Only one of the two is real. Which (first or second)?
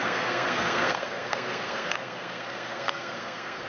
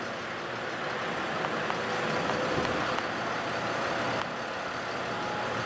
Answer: second